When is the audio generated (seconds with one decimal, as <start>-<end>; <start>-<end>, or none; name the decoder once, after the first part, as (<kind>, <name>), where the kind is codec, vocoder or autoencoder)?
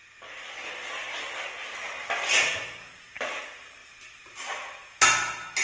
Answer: none